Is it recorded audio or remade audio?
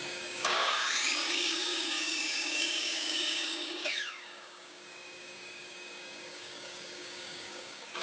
remade